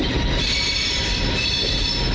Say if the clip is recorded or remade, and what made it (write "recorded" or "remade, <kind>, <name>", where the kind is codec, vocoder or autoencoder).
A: recorded